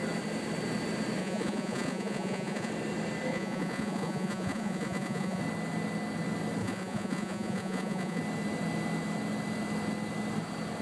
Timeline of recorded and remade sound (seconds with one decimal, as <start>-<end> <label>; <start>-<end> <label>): 0.0-1.2 recorded; 1.2-2.7 remade; 2.7-3.3 recorded; 3.3-5.4 remade; 5.4-6.6 recorded; 6.6-8.2 remade; 8.2-10.8 recorded